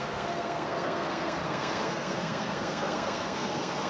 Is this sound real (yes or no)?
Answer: no